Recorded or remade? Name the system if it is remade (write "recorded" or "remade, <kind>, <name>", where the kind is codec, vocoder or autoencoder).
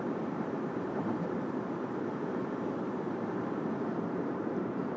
remade, vocoder, BigVGAN v2